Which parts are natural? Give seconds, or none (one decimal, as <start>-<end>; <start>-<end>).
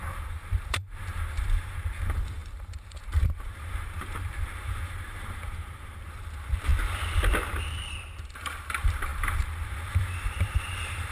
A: 6.7-8.2